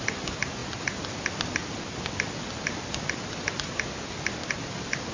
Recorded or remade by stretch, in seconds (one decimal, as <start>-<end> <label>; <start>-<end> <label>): 0.0-5.1 recorded